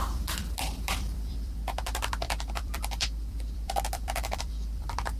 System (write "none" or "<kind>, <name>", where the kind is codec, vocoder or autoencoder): vocoder, BigVGAN v2